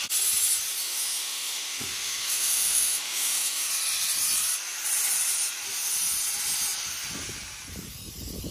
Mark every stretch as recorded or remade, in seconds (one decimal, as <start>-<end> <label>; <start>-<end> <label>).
0.0-0.8 recorded; 0.8-3.7 remade; 3.7-8.5 recorded